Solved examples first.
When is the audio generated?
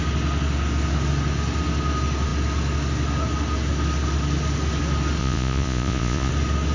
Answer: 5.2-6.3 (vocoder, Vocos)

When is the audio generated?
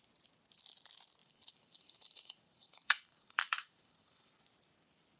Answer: 1.2-4.3 (vocoder, BigVGAN v2)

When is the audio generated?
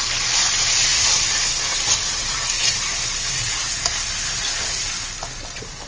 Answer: none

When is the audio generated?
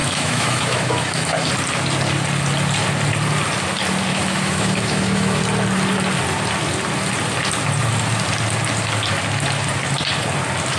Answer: 0.0-1.5 (autoencoder, DAC-VAE); 4.1-5.4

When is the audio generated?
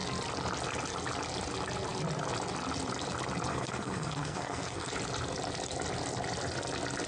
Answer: 3.5-4.9 (codec, SNAC)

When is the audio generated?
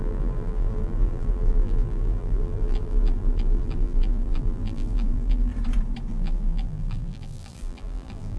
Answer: 0.0-5.5 (vocoder, BigVGAN v2); 6.1-8.4